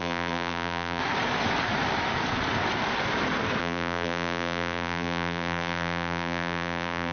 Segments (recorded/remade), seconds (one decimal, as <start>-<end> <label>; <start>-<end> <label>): 0.0-1.0 remade; 1.0-3.6 recorded; 3.6-7.1 remade